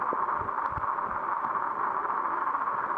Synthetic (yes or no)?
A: no